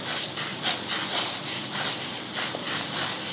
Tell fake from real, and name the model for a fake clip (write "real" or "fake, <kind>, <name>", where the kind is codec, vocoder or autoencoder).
real